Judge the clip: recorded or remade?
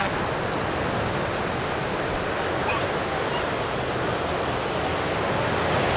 recorded